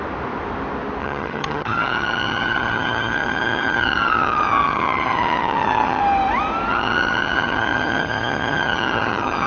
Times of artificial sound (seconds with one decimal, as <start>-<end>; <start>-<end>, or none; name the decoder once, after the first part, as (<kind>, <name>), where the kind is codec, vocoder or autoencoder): 1.0-6.0 (vocoder, HiFi-GAN); 6.7-9.5